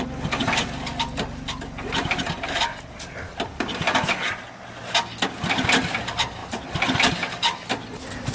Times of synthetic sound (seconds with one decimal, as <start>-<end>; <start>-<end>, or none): none